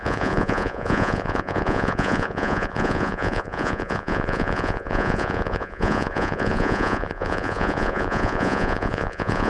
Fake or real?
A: fake